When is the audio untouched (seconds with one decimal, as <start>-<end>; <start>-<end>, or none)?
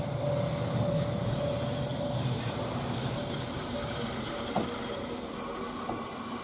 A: 0.0-6.4